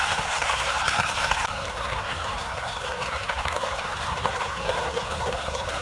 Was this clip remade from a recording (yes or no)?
yes